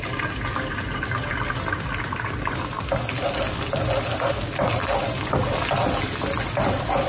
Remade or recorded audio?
recorded